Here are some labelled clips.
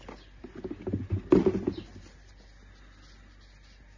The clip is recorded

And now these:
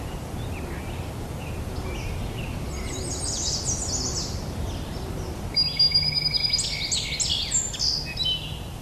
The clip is recorded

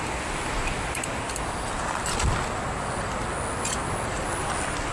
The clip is recorded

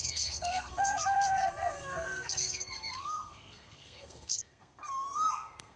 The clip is remade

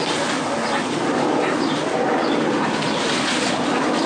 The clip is remade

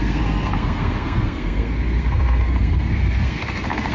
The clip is remade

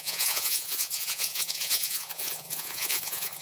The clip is remade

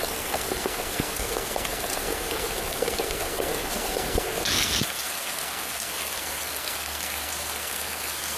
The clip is remade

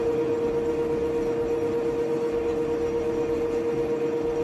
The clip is recorded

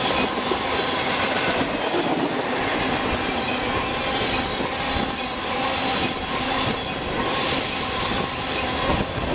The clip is recorded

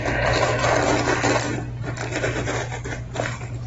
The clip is recorded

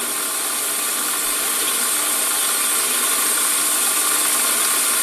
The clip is recorded